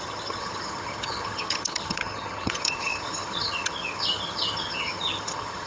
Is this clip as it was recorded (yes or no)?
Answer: no